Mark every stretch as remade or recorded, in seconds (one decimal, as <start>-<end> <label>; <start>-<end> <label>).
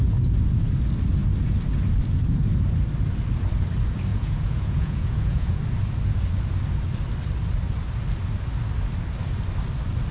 0.0-4.1 recorded; 4.1-5.6 remade; 5.6-10.1 recorded